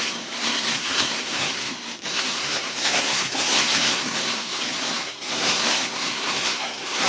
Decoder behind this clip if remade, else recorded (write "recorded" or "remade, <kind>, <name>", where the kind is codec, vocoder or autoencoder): remade, codec, SNAC